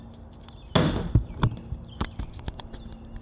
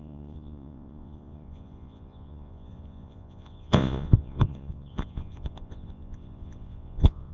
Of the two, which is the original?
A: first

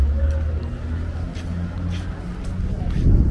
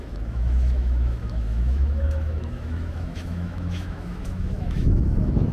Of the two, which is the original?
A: first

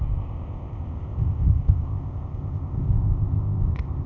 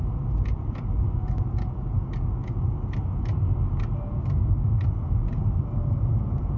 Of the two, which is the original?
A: second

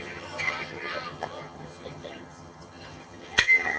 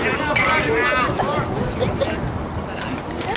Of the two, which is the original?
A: second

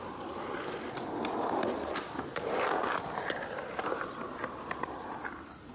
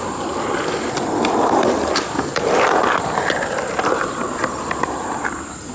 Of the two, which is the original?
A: first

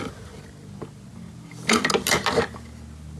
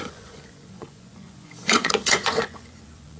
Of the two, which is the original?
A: first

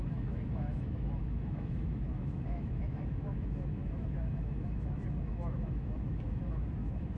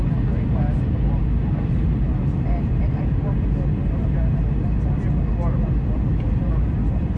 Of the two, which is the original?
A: second